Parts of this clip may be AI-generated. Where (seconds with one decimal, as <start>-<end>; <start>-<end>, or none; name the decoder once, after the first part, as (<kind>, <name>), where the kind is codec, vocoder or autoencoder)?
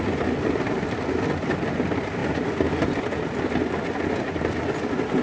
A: none